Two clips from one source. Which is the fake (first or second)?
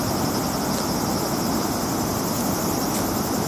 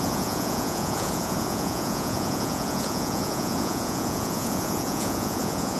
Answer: second